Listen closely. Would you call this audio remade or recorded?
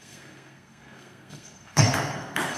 remade